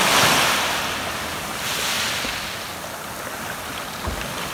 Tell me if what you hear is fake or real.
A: real